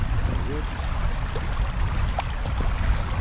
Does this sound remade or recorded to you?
recorded